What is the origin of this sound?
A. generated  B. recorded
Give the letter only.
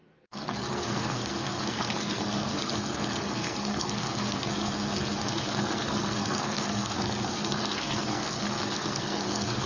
A